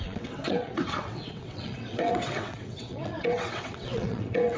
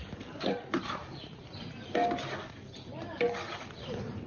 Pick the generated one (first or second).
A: first